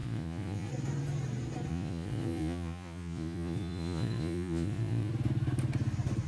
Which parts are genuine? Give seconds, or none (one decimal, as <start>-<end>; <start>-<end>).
0.7-1.7; 5.1-6.3